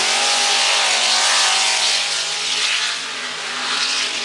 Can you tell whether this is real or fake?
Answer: fake